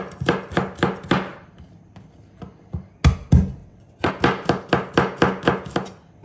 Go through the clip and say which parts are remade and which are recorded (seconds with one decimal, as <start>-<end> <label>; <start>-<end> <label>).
0.0-3.6 recorded; 3.6-4.1 remade; 4.1-6.2 recorded